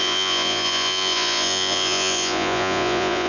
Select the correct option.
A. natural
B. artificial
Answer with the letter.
B